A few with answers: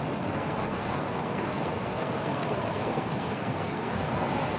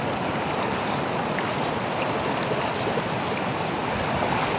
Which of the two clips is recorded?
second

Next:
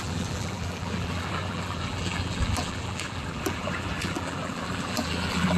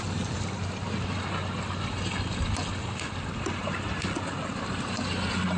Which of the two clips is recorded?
second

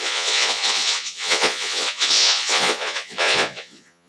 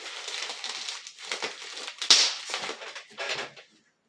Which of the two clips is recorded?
second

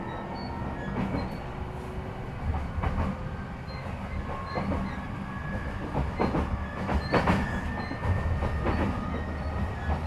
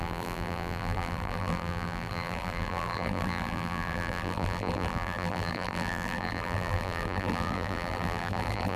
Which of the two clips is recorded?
first